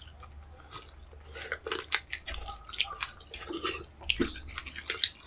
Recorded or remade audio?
recorded